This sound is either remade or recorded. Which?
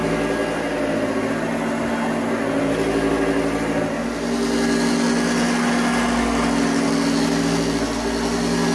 recorded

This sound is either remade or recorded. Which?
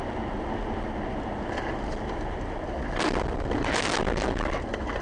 recorded